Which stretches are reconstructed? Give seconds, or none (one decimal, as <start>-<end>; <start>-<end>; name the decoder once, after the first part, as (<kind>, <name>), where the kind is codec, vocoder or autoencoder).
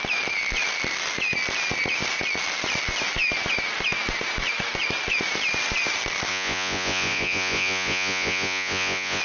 6.3-9.2 (vocoder, Vocos)